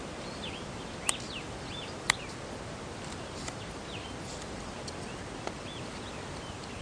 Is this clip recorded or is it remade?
recorded